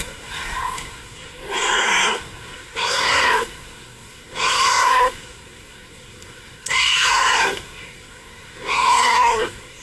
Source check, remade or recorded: remade